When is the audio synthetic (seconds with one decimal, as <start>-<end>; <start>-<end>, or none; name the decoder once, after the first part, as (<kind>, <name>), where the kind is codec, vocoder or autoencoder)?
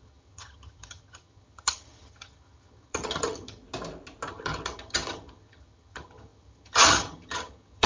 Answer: 0.0-3.6 (vocoder, HiFi-GAN); 4.3-7.9